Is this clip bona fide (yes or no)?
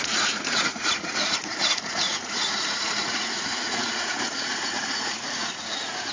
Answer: no